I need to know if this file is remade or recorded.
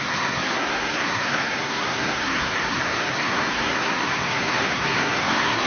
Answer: remade